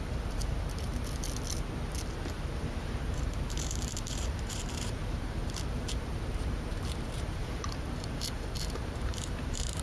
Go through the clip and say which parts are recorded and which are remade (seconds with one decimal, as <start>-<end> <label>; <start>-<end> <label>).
0.0-0.9 remade; 0.9-2.3 recorded; 2.3-9.8 remade